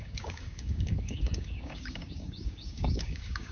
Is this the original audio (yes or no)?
no